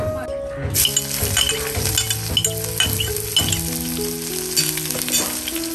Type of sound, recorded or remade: recorded